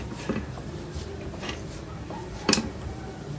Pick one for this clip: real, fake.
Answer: fake